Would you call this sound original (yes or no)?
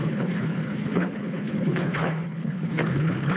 no